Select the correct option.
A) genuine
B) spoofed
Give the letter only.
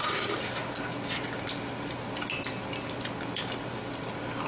A